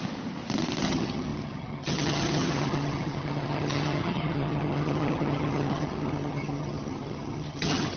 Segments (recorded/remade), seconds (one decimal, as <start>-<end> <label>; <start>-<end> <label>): 0.0-0.8 recorded; 0.8-8.0 remade